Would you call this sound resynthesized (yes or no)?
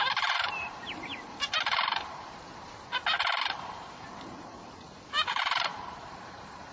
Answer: yes